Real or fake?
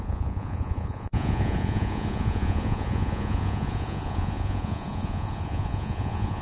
fake